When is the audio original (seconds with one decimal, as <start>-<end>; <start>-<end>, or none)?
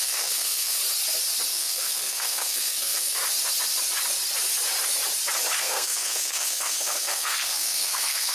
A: 0.8-1.5; 3.2-5.6